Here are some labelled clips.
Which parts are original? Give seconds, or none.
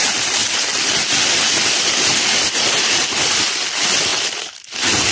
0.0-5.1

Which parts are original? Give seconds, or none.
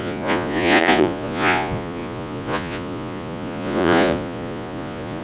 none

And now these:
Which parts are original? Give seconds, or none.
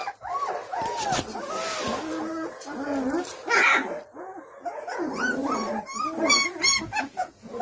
0.0-4.2; 5.4-6.8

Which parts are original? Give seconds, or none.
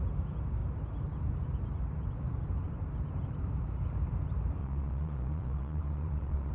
0.0-4.6